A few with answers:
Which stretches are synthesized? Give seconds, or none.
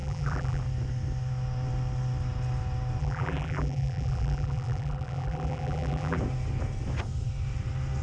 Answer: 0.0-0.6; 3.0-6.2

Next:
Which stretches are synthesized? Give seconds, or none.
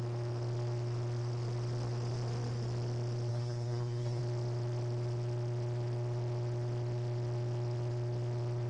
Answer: 3.3-4.2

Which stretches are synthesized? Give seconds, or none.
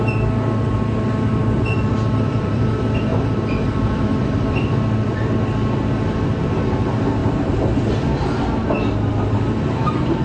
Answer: 1.4-2.7; 3.1-5.4; 7.2-7.8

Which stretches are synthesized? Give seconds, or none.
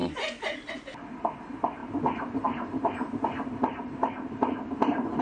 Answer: 0.0-0.7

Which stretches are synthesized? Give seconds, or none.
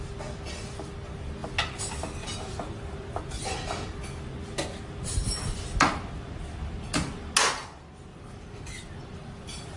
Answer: 8.1-9.8